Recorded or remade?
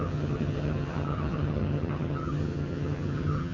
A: remade